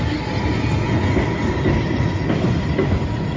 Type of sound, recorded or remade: recorded